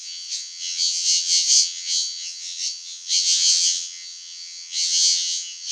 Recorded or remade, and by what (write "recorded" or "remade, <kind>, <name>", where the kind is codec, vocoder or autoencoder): remade, vocoder, WaveNeXt